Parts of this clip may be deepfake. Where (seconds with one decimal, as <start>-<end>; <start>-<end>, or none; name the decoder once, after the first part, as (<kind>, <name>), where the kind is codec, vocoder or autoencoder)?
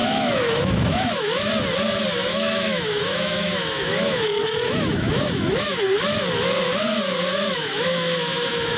0.0-1.5 (autoencoder, DAC-VAE); 2.3-5.8; 7.3-8.8